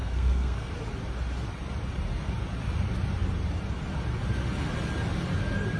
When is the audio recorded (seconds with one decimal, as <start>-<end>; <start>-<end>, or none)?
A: 0.7-5.8